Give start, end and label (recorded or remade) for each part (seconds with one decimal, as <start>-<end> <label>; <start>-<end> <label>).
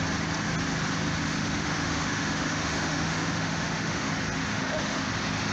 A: 0.0-1.2 recorded; 1.2-4.1 remade; 4.1-4.5 recorded; 4.5-5.1 remade; 5.1-5.5 recorded